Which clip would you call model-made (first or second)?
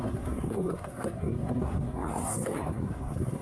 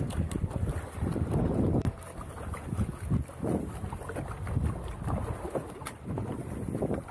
first